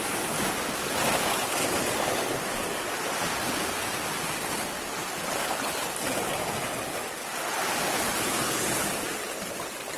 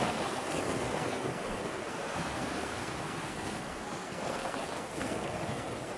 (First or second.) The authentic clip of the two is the first